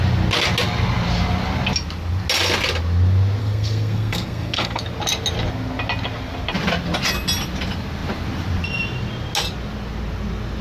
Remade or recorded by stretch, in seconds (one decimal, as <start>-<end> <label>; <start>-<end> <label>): 0.0-3.4 recorded; 3.4-4.8 remade; 4.8-10.6 recorded